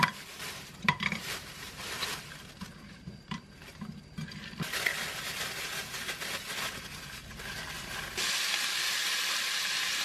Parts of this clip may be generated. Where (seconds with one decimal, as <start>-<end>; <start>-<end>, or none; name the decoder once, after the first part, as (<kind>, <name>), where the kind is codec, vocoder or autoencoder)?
0.0-3.6 (vocoder, BigVGAN v2); 8.3-10.0